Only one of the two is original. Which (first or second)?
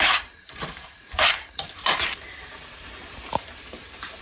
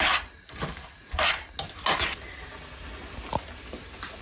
second